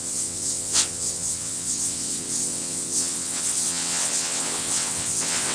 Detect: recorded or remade remade